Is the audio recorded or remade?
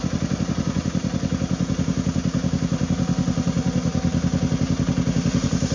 recorded